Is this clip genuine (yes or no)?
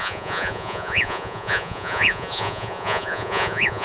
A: no